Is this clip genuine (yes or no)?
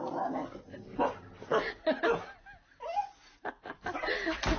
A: yes